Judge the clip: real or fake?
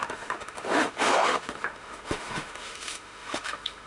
fake